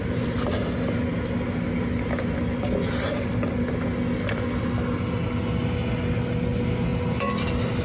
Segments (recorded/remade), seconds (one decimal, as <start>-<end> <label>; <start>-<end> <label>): 0.0-7.8 recorded